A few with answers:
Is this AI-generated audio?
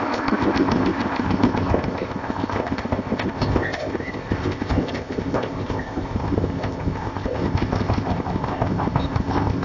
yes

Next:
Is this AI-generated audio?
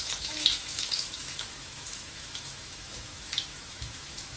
yes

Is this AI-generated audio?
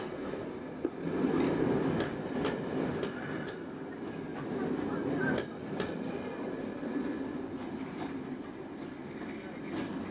no